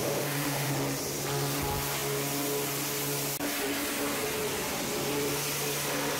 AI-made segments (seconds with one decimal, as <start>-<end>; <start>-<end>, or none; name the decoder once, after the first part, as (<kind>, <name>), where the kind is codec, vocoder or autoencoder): 0.0-0.7 (autoencoder, DAC-VAE)